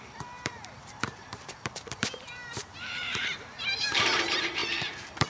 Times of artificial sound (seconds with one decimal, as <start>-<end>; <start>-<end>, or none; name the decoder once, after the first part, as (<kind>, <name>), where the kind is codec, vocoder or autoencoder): 0.0-5.3 (vocoder, BigVGAN v2)